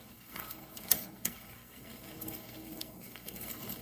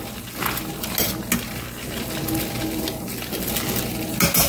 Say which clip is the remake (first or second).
first